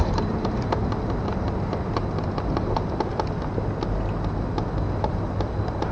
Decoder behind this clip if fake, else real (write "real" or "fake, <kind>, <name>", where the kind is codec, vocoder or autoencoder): real